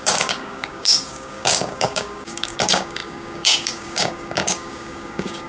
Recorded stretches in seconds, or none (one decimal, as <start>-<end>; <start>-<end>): none

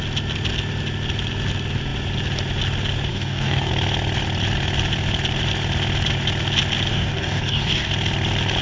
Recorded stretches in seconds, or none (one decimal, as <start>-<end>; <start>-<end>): 0.0-3.1; 3.7-6.9; 7.9-8.6

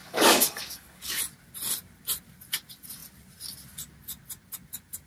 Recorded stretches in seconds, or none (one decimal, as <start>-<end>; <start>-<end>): 1.2-5.1

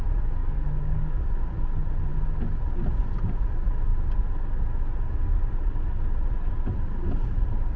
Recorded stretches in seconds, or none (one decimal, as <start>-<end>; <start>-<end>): 0.0-0.4; 1.3-7.8